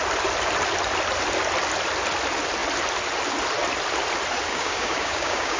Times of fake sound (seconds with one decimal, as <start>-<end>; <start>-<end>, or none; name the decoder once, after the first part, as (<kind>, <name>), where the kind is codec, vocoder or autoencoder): 4.5-5.6 (codec, DAC)